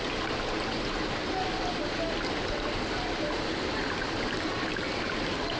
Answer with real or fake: real